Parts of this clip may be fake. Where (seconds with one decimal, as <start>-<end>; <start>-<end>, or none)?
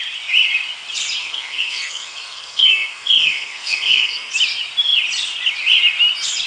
1.2-4.3